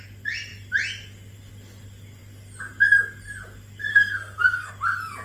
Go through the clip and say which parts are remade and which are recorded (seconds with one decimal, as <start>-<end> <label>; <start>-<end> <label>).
0.0-3.9 recorded; 3.9-4.7 remade; 4.7-5.2 recorded